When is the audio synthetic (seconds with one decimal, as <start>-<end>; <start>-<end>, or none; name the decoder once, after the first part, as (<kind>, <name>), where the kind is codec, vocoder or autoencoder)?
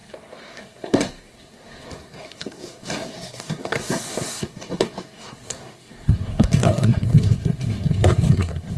0.0-8.8 (codec, SNAC)